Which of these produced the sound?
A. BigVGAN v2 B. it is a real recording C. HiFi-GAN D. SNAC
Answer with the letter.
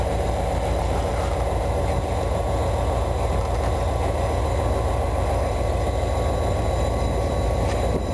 A